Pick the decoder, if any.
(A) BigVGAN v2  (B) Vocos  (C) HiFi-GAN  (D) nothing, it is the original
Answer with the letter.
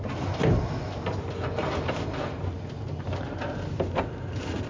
D